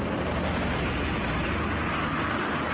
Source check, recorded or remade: recorded